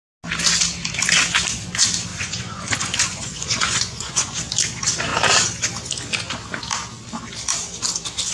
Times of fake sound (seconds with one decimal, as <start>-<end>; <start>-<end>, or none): 2.1-4.4